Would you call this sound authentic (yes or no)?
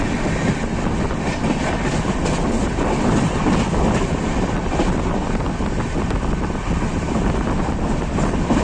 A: yes